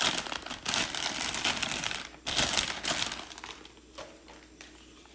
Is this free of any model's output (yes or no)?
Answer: yes